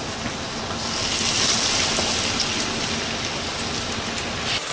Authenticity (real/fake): real